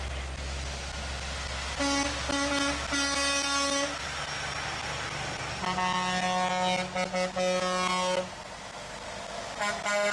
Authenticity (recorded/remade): recorded